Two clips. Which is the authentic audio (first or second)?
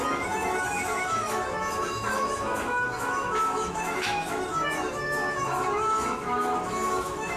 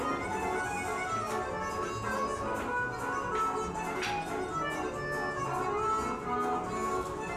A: second